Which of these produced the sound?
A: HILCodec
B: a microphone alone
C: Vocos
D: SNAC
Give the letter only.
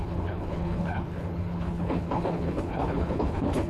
A